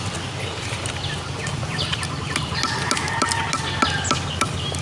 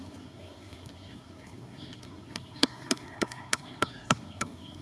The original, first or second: first